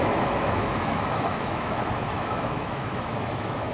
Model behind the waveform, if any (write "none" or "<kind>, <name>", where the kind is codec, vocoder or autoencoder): autoencoder, DAC-VAE